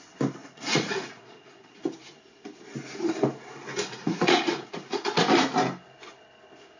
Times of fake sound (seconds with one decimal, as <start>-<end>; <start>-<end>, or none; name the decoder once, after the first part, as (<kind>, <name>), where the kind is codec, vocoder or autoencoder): 0.4-1.8 (vocoder, Vocos); 3.7-5.2